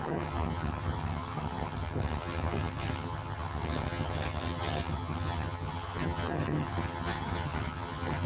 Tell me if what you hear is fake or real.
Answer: fake